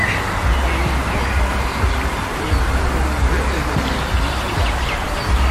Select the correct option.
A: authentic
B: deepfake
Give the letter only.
A